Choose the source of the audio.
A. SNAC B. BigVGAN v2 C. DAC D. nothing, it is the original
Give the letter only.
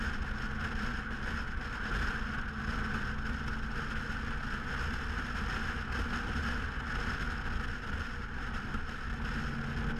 D